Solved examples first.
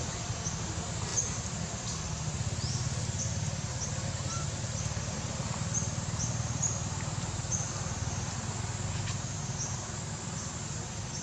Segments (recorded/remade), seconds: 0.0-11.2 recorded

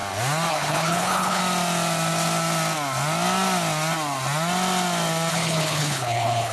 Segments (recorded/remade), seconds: 0.0-0.5 recorded; 0.5-1.4 remade; 1.4-5.3 recorded; 5.3-6.5 remade